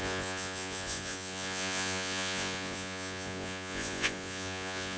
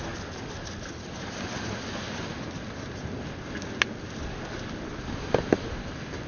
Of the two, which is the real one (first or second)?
second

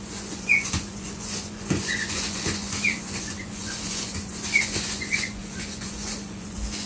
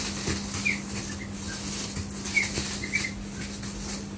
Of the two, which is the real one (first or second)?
second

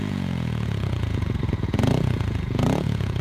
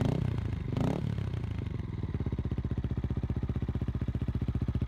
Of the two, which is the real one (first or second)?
second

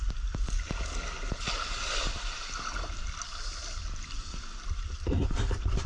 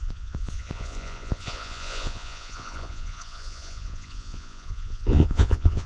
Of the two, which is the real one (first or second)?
first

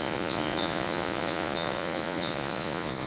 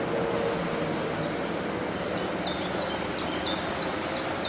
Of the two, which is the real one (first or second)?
second